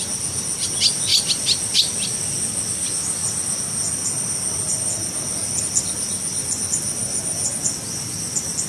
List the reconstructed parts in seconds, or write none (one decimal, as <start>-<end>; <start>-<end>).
none